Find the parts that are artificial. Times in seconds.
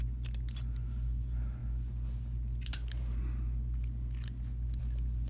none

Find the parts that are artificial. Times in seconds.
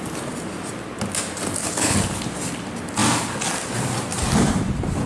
1.6-2.2 (codec, HILCodec)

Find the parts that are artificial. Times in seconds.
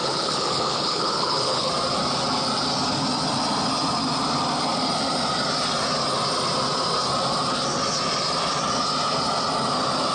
0.0-1.7 (codec, HILCodec)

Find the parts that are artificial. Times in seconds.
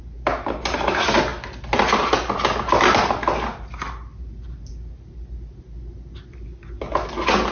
none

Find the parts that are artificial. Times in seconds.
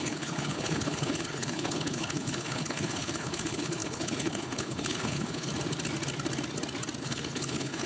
0.0-5.5 (codec, HILCodec); 7.0-7.9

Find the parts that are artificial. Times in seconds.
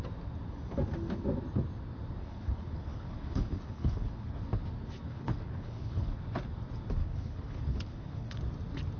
2.2-4.4 (codec, HILCodec); 5.1-6.2; 7.0-8.4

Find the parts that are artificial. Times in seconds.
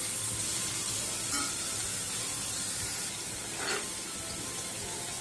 none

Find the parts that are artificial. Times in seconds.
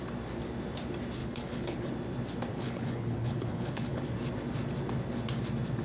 1.2-1.9 (codec, HILCodec); 2.5-4.0